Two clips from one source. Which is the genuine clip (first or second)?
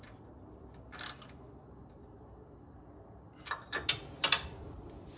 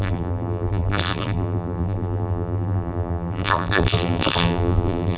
first